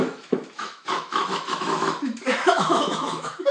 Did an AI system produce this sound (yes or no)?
yes